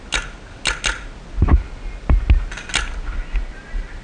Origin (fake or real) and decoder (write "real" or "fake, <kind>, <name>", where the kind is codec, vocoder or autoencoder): real